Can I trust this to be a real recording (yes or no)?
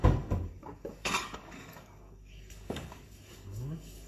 no